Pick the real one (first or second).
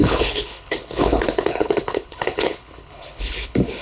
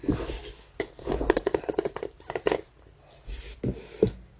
second